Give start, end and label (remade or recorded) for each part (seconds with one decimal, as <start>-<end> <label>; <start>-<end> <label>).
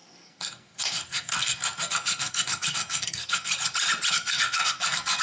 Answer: 0.0-3.5 remade; 3.5-4.1 recorded; 4.1-5.2 remade